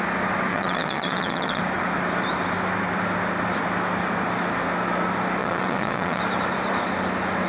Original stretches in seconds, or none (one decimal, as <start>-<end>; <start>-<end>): 0.0-0.5; 1.6-5.4; 6.2-7.5